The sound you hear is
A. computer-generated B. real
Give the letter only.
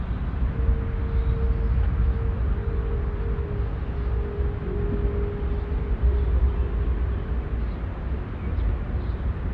B